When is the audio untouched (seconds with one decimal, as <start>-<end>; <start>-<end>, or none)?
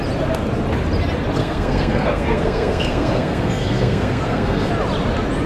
0.0-1.4; 4.7-5.5